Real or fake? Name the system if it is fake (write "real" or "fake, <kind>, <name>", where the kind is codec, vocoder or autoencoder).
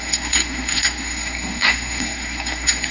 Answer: fake, codec, SNAC